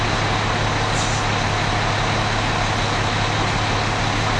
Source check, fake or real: real